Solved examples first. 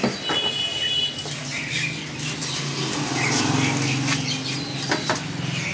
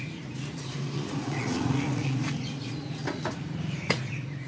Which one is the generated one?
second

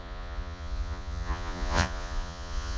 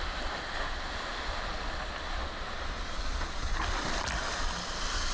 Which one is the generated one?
first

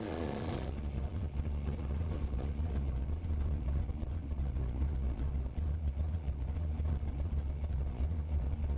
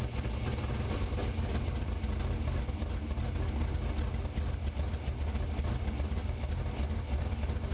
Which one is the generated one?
first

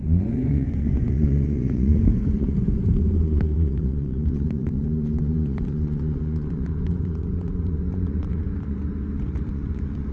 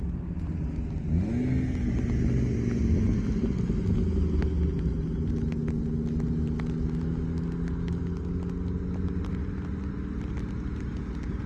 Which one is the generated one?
first